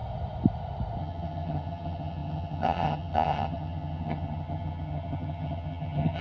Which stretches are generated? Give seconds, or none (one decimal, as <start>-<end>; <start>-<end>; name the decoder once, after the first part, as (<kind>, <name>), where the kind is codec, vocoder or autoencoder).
1.0-6.2 (vocoder, HiFi-GAN)